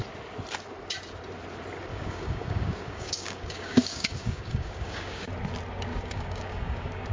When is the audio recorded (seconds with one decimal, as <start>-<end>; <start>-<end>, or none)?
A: 0.0-1.9; 5.3-5.9